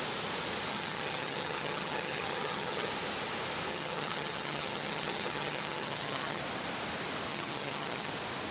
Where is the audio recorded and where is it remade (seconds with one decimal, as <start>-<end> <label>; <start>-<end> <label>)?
0.0-0.7 recorded; 0.7-2.9 remade; 2.9-3.7 recorded; 3.7-6.4 remade; 6.4-7.3 recorded; 7.3-8.1 remade; 8.1-8.5 recorded